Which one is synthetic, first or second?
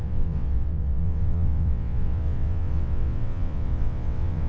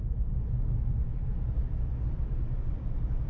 first